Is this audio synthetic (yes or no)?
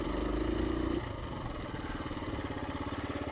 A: no